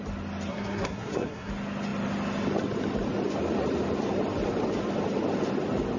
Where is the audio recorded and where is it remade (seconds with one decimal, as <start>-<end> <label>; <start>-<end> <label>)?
0.0-0.5 recorded; 0.5-1.5 remade; 1.5-6.0 recorded